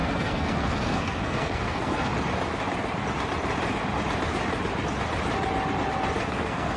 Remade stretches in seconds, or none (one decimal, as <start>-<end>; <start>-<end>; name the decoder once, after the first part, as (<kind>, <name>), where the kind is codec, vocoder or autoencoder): 0.0-2.1 (codec, SNAC); 6.2-6.8